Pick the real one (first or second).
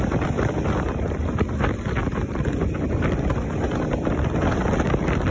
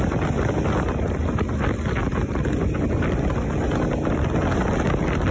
second